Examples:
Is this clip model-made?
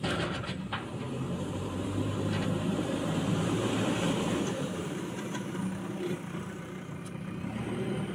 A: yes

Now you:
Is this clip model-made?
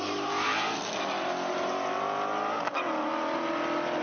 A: no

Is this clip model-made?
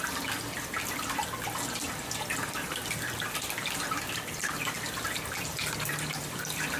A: yes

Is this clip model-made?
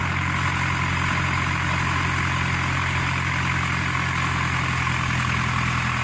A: no